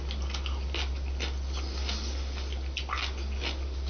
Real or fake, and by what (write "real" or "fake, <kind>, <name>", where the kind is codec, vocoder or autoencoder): real